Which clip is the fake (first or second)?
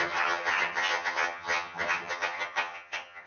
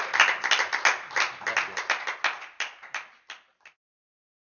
first